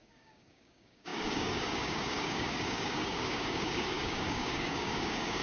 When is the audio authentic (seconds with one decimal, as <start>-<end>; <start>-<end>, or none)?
none